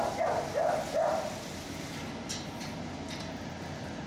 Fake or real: real